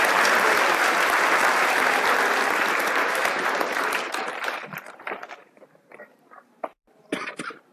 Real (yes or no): no